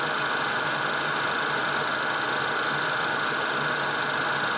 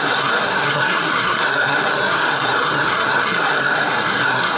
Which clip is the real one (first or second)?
first